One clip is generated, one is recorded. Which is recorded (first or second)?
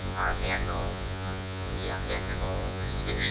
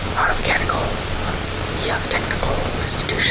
second